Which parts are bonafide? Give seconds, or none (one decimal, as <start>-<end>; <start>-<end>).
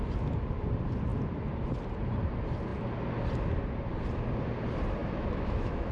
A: 0.0-5.0